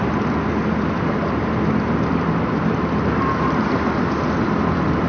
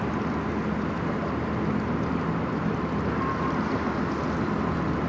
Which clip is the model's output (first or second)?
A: first